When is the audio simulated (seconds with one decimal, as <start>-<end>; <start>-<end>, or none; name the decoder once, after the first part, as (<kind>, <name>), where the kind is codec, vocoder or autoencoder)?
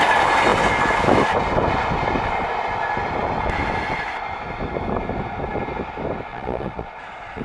6.3-7.4 (vocoder, Vocos)